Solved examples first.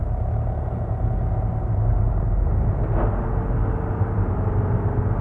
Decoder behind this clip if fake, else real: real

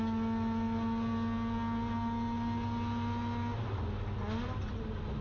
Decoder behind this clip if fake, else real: real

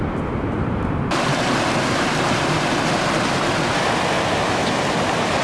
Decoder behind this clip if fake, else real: real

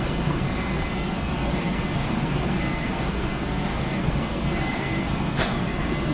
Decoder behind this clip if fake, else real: fake, codec, SNAC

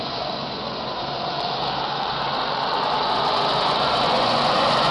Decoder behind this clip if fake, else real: fake, vocoder, Vocos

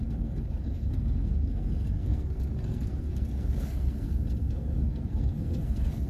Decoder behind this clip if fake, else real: fake, codec, SNAC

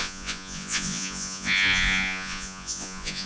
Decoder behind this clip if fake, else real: fake, vocoder, Vocos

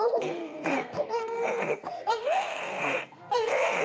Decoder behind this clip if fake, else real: fake, codec, SNAC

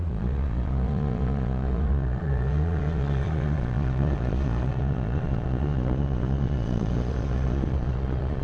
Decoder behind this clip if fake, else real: fake, vocoder, Vocos